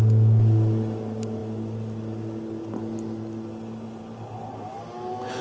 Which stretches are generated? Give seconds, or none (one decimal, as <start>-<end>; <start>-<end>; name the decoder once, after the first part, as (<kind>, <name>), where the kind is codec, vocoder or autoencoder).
none